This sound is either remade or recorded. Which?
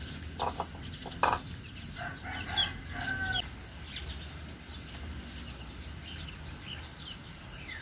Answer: recorded